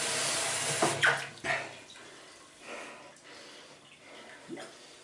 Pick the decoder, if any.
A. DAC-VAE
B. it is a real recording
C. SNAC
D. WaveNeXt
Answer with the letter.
B